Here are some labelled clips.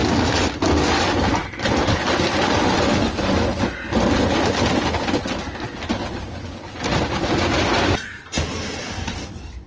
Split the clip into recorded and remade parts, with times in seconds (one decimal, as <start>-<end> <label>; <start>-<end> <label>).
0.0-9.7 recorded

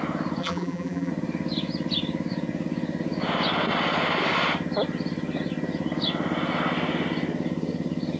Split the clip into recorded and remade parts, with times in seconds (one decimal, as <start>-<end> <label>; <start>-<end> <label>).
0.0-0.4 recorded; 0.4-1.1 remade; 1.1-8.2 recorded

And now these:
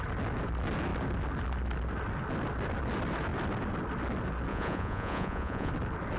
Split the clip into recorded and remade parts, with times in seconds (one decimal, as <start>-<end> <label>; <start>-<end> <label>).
0.0-4.5 recorded; 4.5-5.7 remade; 5.7-6.2 recorded

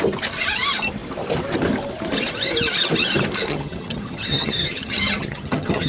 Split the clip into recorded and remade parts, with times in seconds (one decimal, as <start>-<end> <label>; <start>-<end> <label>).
0.0-3.5 recorded; 3.5-5.9 remade